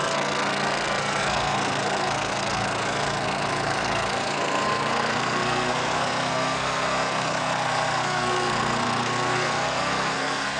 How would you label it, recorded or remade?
remade